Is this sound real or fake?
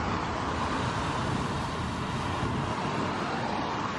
real